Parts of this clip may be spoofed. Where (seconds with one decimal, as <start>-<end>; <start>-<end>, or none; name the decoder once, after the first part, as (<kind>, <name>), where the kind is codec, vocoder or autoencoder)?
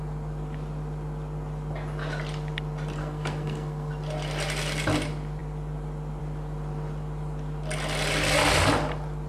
3.0-3.9 (codec, SNAC)